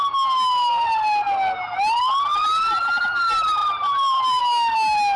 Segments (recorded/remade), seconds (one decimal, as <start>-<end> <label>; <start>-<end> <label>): 0.0-2.3 recorded; 2.3-3.0 remade; 3.0-3.6 recorded; 3.6-4.4 remade; 4.4-5.2 recorded